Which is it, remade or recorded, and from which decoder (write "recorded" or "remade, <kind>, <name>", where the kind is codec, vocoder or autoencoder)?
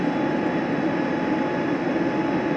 recorded